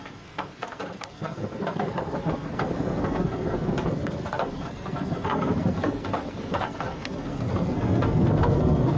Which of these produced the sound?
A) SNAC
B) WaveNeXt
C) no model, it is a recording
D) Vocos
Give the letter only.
A